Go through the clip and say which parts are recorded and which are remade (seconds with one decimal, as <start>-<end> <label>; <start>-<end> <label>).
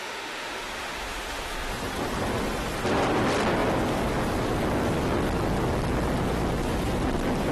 0.0-1.7 remade; 1.7-7.5 recorded